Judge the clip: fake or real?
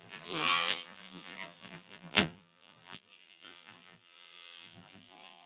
fake